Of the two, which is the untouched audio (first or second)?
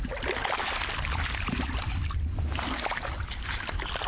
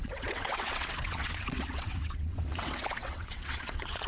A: first